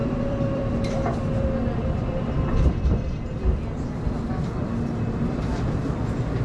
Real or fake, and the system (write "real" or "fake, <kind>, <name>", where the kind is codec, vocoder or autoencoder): fake, vocoder, BigVGAN v2